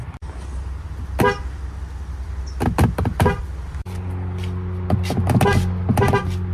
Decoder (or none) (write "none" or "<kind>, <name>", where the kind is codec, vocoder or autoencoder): none